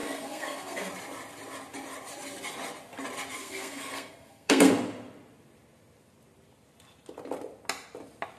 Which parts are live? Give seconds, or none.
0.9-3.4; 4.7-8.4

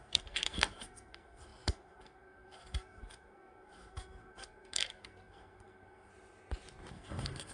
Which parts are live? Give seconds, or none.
6.1-6.9

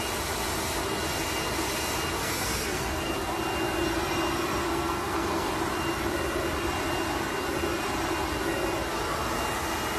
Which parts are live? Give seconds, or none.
0.0-2.2; 3.1-4.6; 5.5-10.0

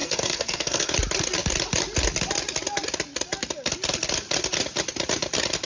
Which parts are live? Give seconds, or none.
0.9-5.6

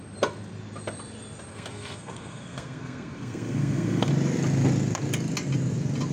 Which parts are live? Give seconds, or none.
0.0-1.5; 4.1-6.1

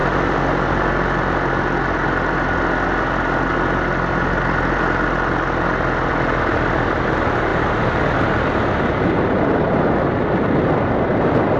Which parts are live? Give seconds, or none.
0.0-11.6

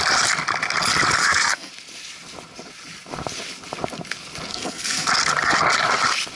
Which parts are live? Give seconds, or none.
0.0-1.2; 1.7-4.5; 5.1-6.3

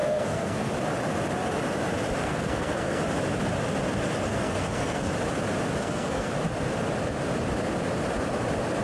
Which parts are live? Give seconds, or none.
0.7-2.2; 3.0-4.3; 5.1-5.8; 6.3-8.8